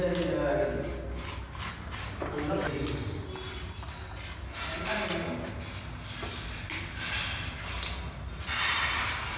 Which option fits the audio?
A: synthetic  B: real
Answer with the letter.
B